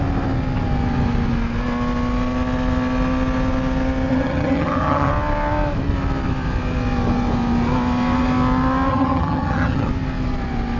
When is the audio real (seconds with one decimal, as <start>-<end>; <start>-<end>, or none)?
0.0-4.1; 5.1-8.9; 9.9-10.8